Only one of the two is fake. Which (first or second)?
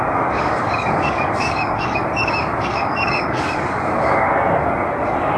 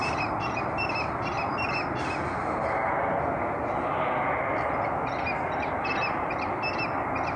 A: first